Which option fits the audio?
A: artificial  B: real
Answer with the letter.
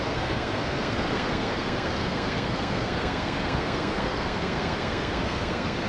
A